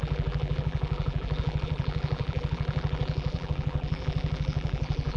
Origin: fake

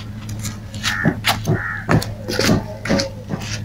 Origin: real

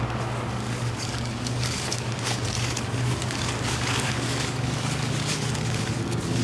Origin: fake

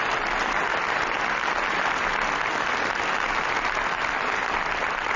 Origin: real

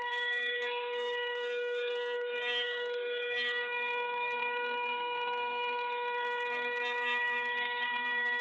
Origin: fake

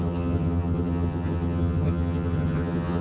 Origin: fake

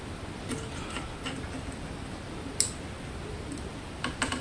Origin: real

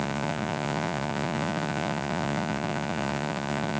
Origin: fake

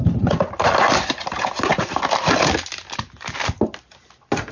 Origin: real